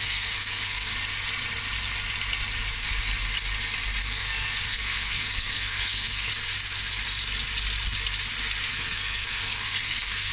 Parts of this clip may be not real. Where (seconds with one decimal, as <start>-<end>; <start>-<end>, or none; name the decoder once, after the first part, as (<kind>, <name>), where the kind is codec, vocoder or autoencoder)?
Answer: 0.0-0.9 (codec, SNAC); 4.0-6.3; 8.7-10.3